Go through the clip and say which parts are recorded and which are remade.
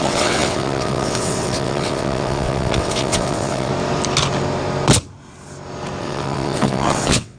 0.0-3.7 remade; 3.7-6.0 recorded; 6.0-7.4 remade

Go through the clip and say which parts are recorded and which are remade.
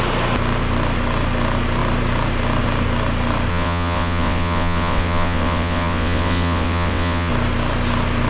0.0-3.5 recorded; 3.5-7.3 remade; 7.3-8.3 recorded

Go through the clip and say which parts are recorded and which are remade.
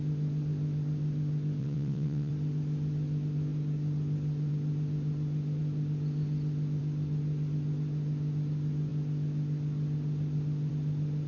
0.0-1.6 recorded; 1.6-2.3 remade; 2.3-11.3 recorded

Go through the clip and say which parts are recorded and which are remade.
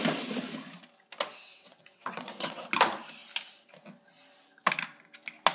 0.0-1.3 recorded; 1.3-2.7 remade; 2.7-5.5 recorded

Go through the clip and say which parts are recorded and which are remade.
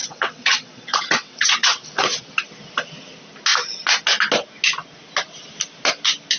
0.0-2.2 remade; 2.2-6.4 recorded